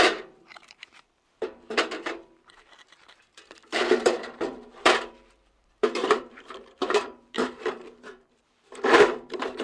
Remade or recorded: remade